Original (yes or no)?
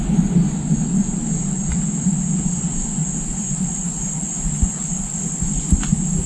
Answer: yes